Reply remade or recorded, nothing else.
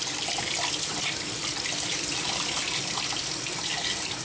recorded